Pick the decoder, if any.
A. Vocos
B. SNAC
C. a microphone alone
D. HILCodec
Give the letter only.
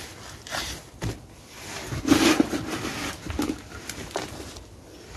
C